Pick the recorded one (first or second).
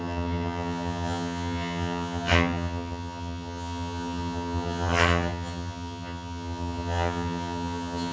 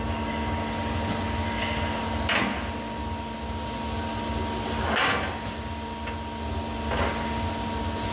second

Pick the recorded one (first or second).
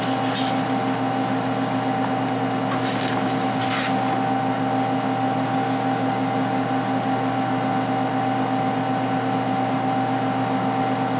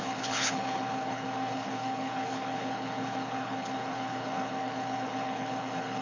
first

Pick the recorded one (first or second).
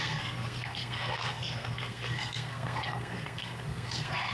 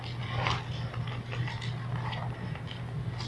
second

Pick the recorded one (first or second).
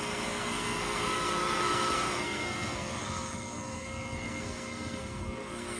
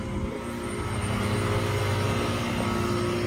second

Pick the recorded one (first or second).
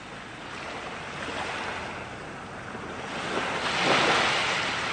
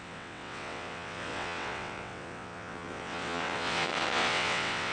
first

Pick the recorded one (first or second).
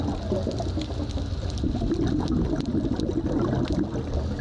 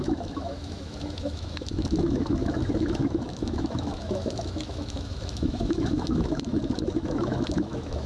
first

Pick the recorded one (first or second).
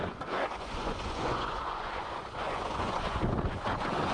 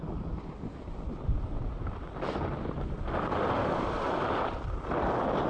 second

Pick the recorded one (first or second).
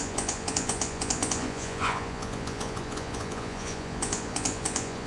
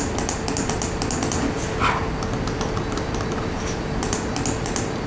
second